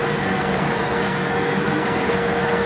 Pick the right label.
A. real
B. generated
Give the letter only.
B